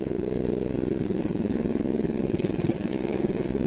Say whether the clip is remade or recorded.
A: remade